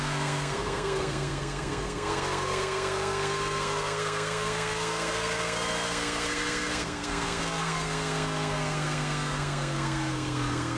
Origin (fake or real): fake